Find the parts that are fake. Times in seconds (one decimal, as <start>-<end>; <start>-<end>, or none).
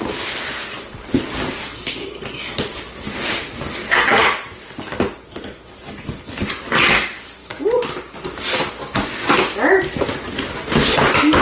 none